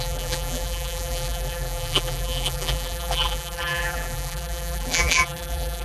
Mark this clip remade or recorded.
remade